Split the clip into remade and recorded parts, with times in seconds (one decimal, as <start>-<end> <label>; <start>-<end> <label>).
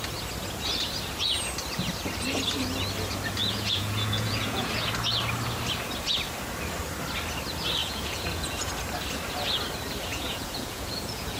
0.0-3.4 recorded; 3.4-4.9 remade; 4.9-7.8 recorded; 7.8-8.7 remade; 8.7-10.1 recorded; 10.1-11.4 remade